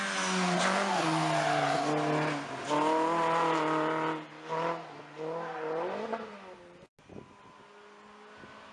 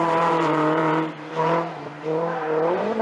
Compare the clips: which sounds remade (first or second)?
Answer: second